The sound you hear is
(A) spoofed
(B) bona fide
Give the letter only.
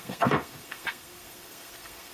A